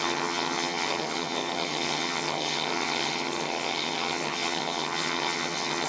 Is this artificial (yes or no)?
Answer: yes